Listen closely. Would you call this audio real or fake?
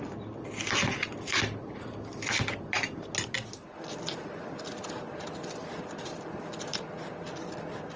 real